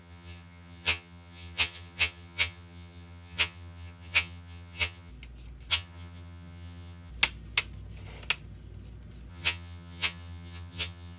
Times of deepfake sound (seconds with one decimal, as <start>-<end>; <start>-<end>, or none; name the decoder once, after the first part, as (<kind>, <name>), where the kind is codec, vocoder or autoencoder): 0.0-5.1 (vocoder, HiFi-GAN); 5.7-7.1; 9.3-11.2